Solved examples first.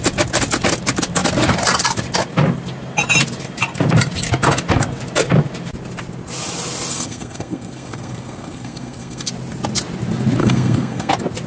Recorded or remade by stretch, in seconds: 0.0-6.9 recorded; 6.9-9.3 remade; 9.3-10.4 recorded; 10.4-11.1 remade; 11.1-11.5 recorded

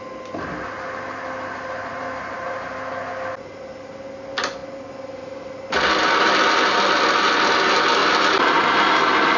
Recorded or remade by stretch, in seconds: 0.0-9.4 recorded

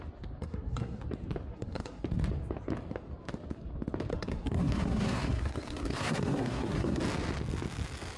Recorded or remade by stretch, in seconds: 0.0-0.4 recorded; 0.4-1.0 remade; 1.0-1.5 recorded; 1.5-2.0 remade; 2.0-4.1 recorded; 4.1-7.0 remade; 7.0-8.2 recorded

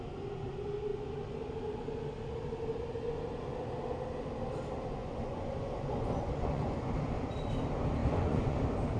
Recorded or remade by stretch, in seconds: 0.0-5.0 recorded; 5.0-6.9 remade; 6.9-8.0 recorded; 8.0-8.6 remade; 8.6-9.0 recorded

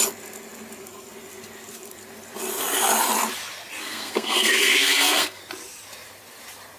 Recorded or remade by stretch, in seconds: 0.0-3.8 recorded; 3.8-5.4 remade; 5.4-6.8 recorded